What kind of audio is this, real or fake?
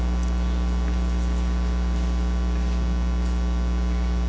real